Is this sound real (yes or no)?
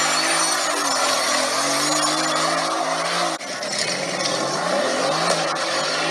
yes